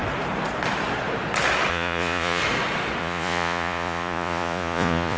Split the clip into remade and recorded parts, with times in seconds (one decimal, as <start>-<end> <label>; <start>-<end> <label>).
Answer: 0.0-1.7 recorded; 1.7-2.4 remade; 2.4-3.0 recorded; 3.0-5.2 remade